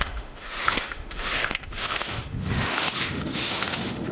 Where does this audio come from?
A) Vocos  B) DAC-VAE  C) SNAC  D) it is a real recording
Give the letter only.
B